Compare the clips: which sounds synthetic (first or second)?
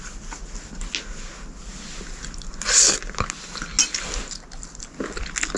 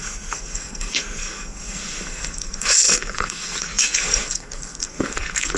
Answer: second